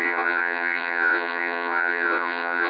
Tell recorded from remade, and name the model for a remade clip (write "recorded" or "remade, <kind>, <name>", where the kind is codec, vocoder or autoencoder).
remade, vocoder, WaveNeXt